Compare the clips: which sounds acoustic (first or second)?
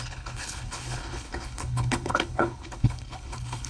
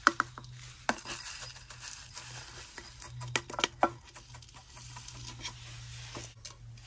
second